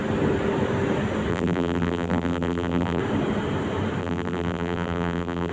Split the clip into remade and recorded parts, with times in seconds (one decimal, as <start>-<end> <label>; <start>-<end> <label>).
0.0-1.3 recorded; 1.3-3.0 remade; 3.0-4.0 recorded; 4.0-5.5 remade